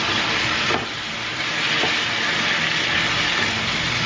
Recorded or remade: recorded